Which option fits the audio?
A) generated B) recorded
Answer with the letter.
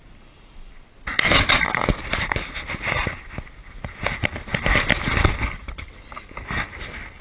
B